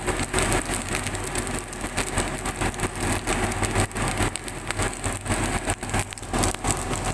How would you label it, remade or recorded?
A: recorded